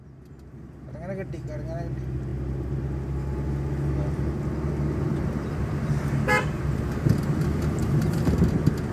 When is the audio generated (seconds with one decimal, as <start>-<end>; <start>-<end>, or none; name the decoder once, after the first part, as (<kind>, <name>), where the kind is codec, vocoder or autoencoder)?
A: 7.8-8.5 (vocoder, BigVGAN v2)